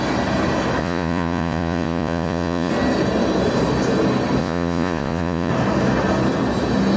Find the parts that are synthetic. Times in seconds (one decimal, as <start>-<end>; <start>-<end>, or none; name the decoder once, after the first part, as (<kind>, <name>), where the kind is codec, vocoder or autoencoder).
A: 0.8-2.7 (vocoder, Vocos); 4.4-5.5